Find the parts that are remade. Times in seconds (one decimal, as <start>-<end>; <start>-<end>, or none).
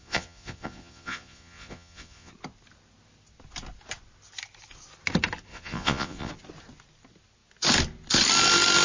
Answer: 0.0-2.3; 5.5-6.3